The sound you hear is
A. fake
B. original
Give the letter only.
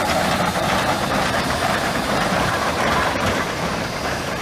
A